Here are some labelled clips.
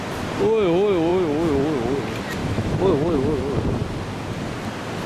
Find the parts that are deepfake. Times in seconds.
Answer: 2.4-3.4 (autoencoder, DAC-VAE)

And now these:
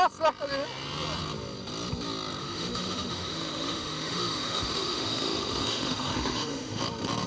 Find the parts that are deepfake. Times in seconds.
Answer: 2.4-6.8 (autoencoder, DAC-VAE)

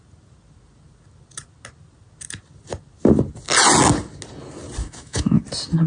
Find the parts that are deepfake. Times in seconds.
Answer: 4.8-5.4 (autoencoder, DAC-VAE)

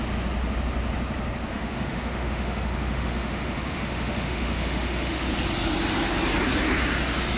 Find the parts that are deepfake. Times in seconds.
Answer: 1.5-5.3 (autoencoder, DAC-VAE)

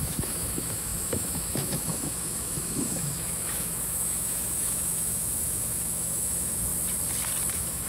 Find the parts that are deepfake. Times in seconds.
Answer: 0.0-6.7 (autoencoder, DAC-VAE); 7.5-7.9